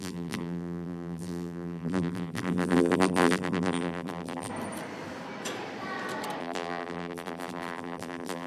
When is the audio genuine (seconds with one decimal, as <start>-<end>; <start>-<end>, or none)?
4.5-6.4